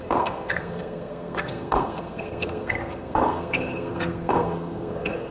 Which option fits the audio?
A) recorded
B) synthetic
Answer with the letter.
B